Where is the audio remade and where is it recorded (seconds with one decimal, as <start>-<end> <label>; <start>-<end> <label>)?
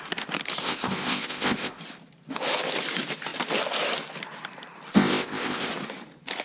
0.0-0.6 recorded; 0.6-1.8 remade; 1.8-4.9 recorded; 4.9-5.7 remade; 5.7-6.4 recorded